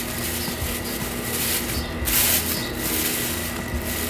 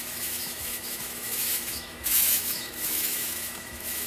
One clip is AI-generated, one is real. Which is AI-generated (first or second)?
second